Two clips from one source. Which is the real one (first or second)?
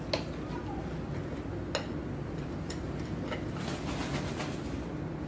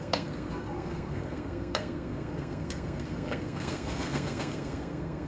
first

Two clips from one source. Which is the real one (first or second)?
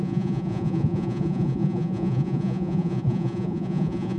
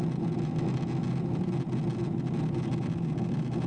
second